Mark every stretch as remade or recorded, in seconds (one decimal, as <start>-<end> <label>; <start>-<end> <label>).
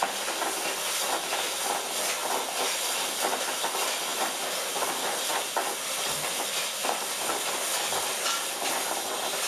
0.0-9.5 recorded